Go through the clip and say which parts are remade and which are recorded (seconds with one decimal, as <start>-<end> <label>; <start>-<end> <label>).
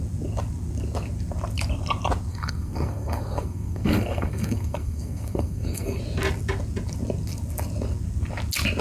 0.0-2.3 recorded; 2.3-6.0 remade; 6.0-8.8 recorded